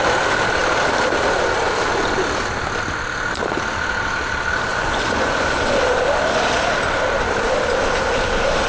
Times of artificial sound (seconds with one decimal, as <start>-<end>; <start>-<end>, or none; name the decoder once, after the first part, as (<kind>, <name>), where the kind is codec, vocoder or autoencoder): 4.7-5.6 (vocoder, Vocos)